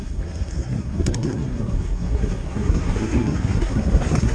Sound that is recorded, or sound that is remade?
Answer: remade